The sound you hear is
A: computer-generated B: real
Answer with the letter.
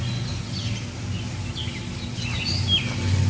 B